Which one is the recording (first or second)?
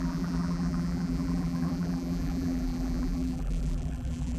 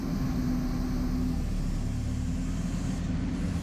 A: second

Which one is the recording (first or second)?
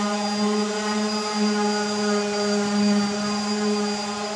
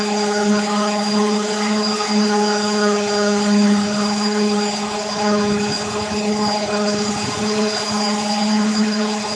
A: first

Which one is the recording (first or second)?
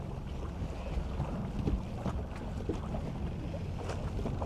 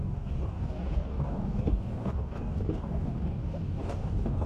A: first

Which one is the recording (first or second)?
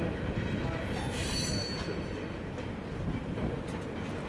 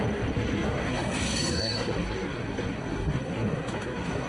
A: first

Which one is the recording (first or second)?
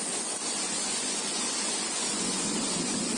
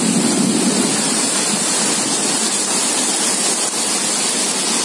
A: second